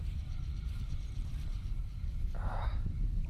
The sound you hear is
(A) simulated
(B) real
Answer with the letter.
A